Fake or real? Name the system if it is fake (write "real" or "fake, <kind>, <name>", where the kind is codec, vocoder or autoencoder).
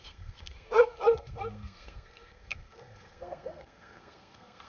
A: fake, codec, SNAC